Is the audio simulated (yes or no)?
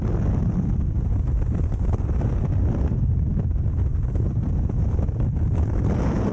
yes